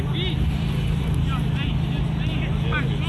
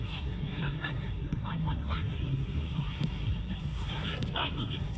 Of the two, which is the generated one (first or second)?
second